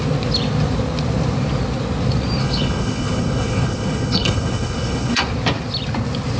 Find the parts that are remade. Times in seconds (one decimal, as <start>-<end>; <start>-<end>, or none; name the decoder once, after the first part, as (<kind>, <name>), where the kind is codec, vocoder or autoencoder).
2.4-5.2 (codec, HILCodec)